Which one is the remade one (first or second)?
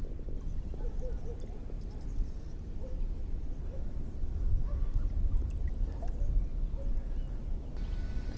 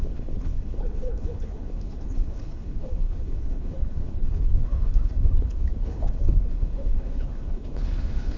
second